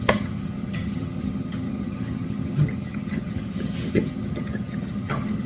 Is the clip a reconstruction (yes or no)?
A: yes